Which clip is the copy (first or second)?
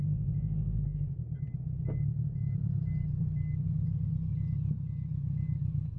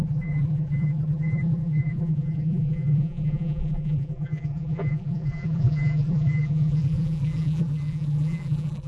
second